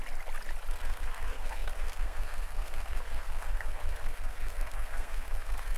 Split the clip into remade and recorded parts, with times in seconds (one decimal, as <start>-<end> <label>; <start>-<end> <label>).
0.0-0.7 recorded; 0.7-5.8 remade